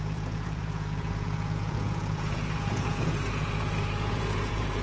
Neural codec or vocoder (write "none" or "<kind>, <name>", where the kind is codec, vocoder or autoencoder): vocoder, Vocos